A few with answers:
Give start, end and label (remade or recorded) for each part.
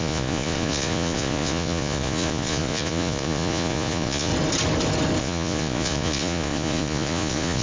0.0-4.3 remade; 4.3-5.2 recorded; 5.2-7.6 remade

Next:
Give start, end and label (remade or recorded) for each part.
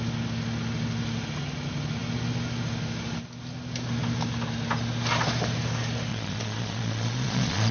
0.0-6.1 recorded; 6.1-7.7 remade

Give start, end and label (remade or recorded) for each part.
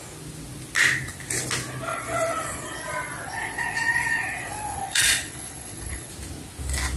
0.0-1.9 recorded; 1.9-6.1 remade; 6.1-7.0 recorded